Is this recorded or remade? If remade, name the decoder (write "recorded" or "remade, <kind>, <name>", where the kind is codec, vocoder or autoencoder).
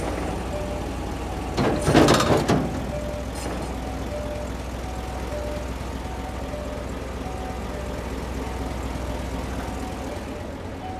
recorded